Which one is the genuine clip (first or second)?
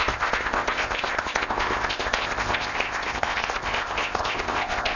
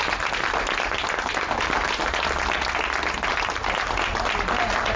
second